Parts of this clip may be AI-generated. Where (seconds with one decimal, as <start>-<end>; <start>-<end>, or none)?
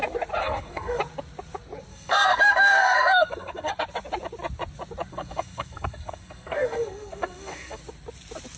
0.4-1.0; 1.9-3.7; 5.1-7.8